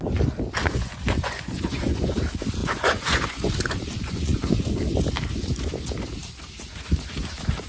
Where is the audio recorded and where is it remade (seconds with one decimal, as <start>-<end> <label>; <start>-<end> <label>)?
0.0-0.6 recorded; 0.6-2.2 remade; 2.2-2.6 recorded; 2.6-4.7 remade; 4.7-7.7 recorded